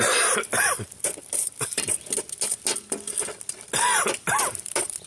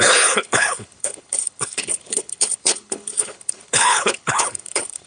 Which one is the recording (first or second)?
first